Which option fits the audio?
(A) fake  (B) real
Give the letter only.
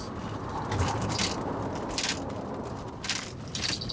B